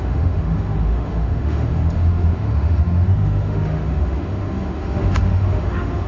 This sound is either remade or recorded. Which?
remade